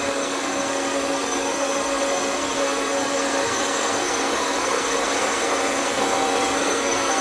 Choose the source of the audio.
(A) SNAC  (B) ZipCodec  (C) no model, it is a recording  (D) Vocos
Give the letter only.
A